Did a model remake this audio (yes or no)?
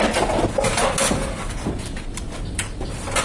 no